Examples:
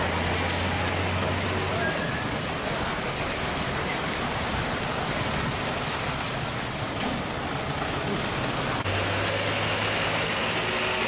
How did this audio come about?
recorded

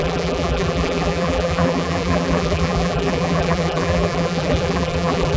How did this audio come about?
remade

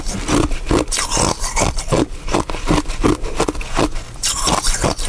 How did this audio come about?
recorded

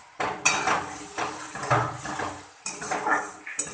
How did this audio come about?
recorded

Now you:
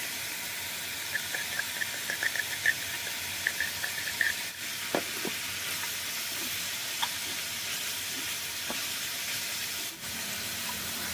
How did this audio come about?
recorded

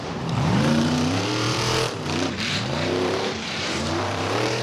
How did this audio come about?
remade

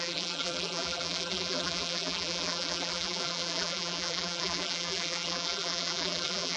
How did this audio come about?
remade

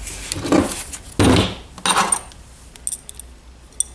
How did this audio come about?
recorded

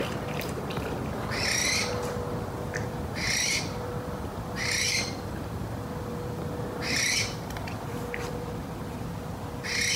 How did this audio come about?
remade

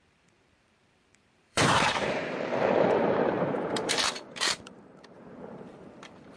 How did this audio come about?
remade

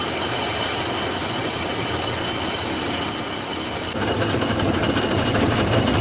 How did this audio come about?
recorded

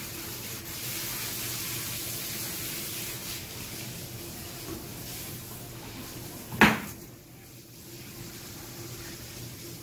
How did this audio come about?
recorded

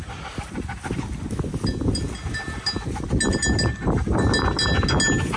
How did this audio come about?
recorded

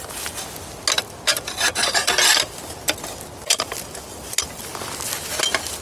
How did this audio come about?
recorded